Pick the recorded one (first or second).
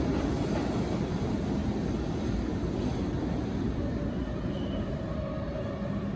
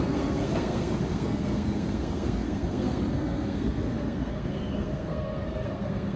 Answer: first